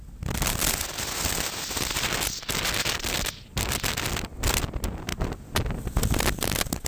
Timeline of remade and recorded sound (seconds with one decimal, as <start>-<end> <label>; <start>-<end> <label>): 0.0-6.9 recorded